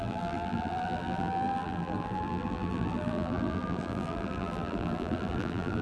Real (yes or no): no